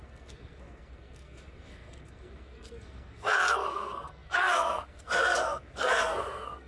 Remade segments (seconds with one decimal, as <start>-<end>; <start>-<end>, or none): 0.0-6.7